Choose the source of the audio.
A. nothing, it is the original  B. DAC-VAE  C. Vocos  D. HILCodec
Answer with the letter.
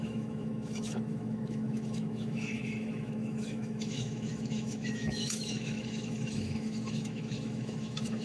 B